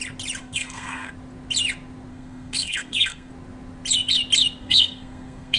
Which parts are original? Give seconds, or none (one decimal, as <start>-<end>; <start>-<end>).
0.0-0.4; 1.1-2.1; 3.3-4.6